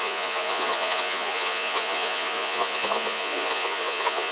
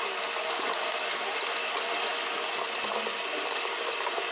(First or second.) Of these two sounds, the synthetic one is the first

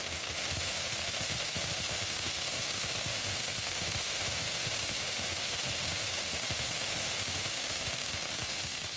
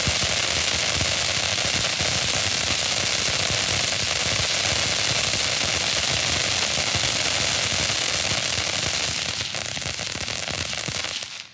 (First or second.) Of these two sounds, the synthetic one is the first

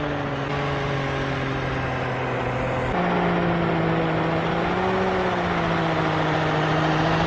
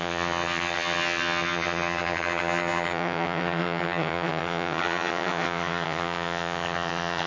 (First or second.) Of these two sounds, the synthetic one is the second